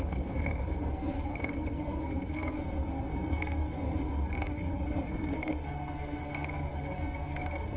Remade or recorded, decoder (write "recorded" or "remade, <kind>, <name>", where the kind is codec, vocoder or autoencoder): remade, codec, SNAC